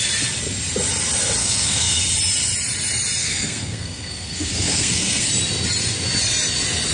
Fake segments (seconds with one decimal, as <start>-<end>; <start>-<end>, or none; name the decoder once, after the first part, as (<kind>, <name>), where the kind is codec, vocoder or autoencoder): 1.4-2.0 (codec, SNAC); 3.2-5.3